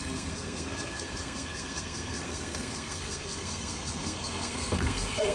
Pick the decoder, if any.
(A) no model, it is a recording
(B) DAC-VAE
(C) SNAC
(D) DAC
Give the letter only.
C